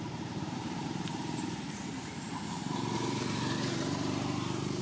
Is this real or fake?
fake